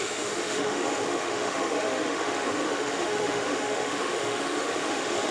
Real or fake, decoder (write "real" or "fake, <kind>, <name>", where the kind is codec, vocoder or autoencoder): fake, autoencoder, DAC-VAE